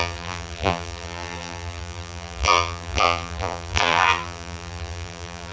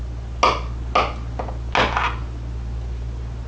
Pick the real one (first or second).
second